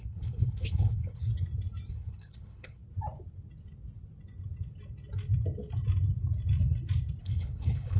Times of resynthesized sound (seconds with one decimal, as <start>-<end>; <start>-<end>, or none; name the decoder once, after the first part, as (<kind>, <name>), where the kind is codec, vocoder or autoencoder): 0.0-1.3 (codec, HILCodec); 1.9-2.8; 7.2-8.0